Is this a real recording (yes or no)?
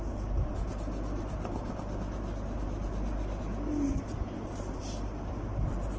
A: yes